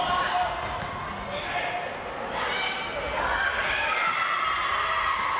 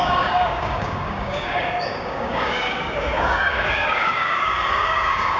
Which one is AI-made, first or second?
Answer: second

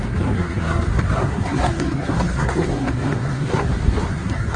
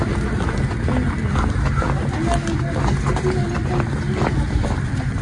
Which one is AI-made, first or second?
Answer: first